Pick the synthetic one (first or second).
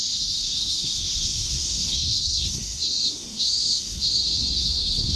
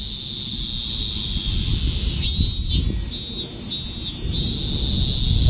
first